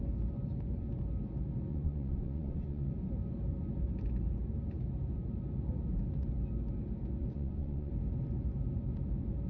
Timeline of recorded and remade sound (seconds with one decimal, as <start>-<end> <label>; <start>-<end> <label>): 0.0-1.7 recorded; 1.7-2.9 remade; 2.9-7.2 recorded; 7.2-7.9 remade; 7.9-9.5 recorded